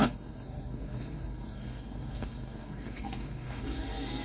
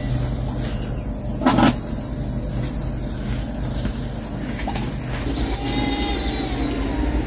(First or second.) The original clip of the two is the second